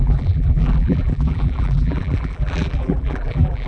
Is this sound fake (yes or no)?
yes